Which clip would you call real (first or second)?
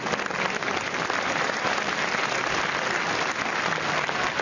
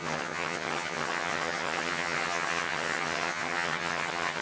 first